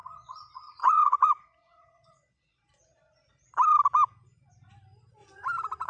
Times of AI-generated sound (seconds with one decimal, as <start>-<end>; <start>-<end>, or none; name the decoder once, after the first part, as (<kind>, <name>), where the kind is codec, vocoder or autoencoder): 0.0-3.5 (vocoder, Vocos)